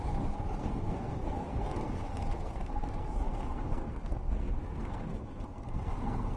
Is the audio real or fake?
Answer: fake